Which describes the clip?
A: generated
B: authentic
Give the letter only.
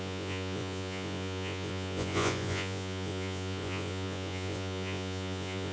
A